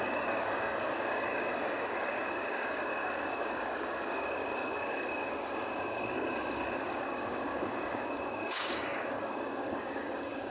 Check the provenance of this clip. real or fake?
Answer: fake